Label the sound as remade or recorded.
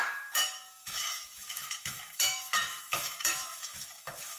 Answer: remade